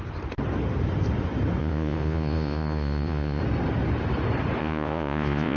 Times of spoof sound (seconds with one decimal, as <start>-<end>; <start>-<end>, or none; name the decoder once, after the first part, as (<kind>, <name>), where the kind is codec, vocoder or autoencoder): 1.6-3.4 (vocoder, Vocos); 4.6-5.6